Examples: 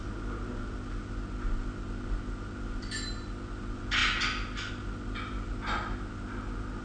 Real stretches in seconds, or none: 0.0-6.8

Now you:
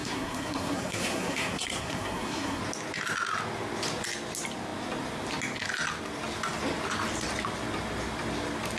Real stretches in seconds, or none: 2.6-8.8

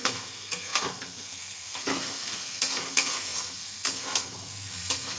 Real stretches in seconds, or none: none

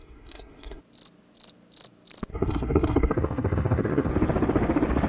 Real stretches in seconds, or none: 0.8-2.3; 4.1-5.1

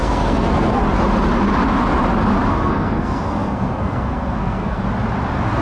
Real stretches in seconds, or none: 0.8-2.5; 4.8-5.6